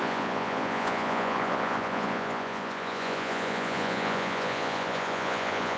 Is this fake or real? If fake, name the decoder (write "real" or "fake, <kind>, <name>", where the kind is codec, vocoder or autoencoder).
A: fake, vocoder, Vocos